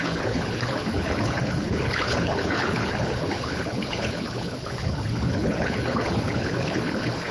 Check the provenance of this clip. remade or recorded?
remade